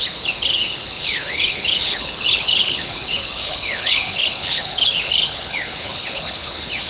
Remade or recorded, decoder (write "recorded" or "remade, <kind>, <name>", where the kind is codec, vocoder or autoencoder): remade, codec, HILCodec